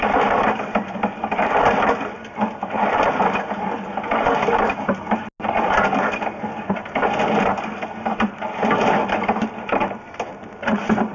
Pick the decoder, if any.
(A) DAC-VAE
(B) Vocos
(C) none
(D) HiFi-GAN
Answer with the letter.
C